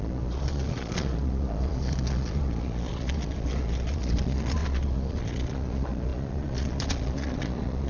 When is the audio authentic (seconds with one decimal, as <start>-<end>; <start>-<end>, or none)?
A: none

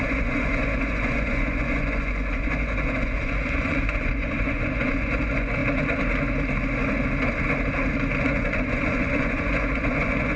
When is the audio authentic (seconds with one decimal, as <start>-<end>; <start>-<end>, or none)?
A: 5.6-8.2

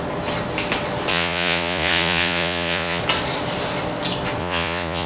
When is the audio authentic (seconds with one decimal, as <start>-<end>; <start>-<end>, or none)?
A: 0.0-1.1; 3.0-4.4

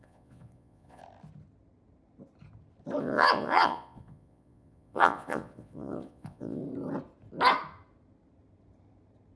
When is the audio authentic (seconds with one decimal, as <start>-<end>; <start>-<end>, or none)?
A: 1.0-3.0; 6.6-9.4

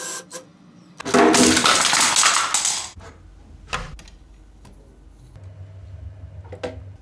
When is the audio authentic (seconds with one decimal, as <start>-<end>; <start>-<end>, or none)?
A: 0.0-7.0

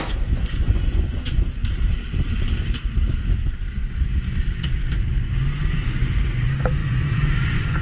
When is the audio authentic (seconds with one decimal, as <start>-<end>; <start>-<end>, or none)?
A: 1.6-5.7

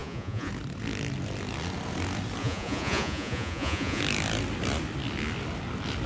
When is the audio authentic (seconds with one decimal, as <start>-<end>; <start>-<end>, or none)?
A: 0.5-2.4; 4.0-6.1